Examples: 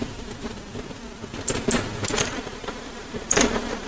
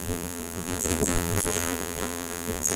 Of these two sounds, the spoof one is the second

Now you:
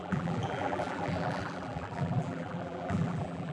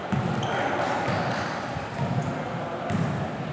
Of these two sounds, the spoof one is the first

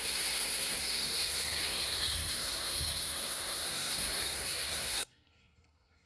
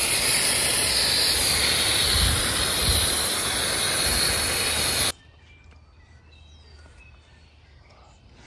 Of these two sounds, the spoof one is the first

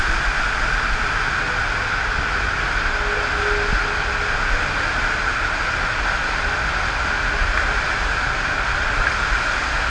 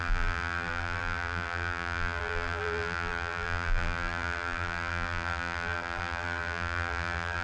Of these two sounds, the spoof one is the second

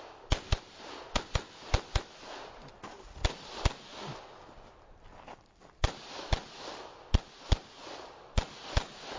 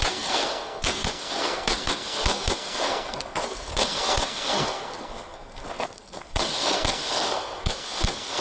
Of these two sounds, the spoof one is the second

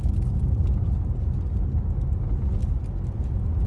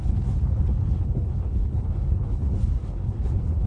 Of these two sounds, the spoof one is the second